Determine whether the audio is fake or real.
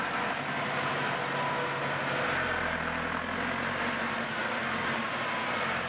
real